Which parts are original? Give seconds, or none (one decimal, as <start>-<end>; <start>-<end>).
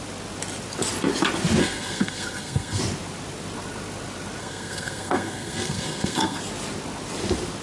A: 0.0-1.6; 2.8-4.4; 6.4-7.6